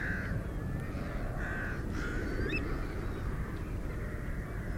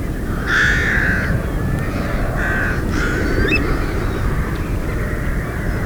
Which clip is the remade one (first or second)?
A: second